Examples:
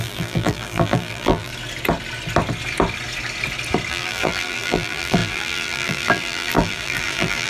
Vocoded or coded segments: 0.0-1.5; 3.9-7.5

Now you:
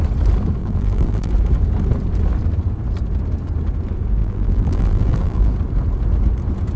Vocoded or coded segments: 0.6-1.3; 4.2-5.5

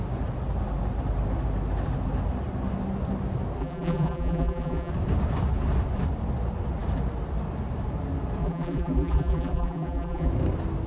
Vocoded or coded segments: 3.6-4.9; 8.4-10.3

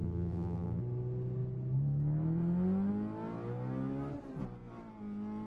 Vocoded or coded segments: 0.0-0.8

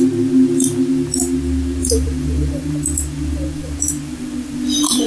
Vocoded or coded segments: 1.8-5.1

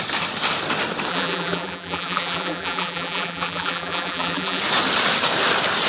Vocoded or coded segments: 1.1-4.6

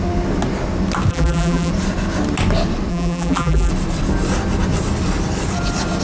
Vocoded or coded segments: 1.1-1.7; 2.9-3.7